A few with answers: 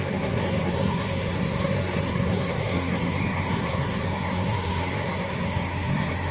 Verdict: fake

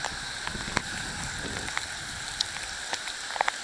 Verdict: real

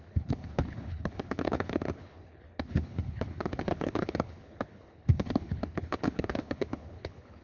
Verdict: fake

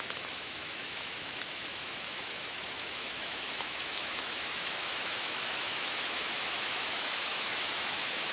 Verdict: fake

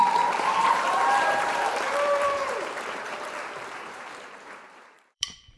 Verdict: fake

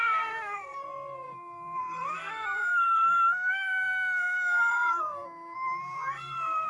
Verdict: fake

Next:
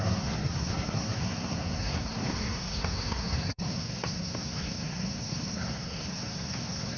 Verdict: fake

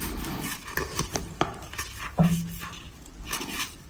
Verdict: real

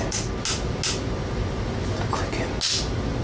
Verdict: real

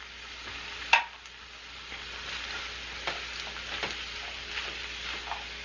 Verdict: real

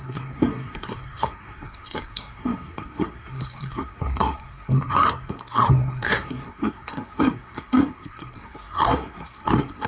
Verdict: fake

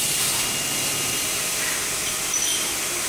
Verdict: real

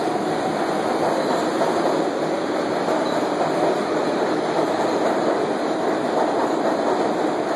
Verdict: real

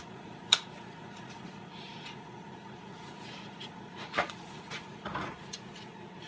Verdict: fake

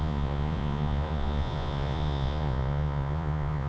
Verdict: fake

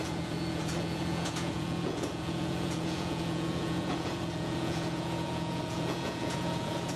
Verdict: fake